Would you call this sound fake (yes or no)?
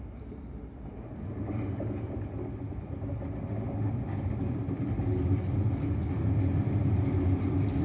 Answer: no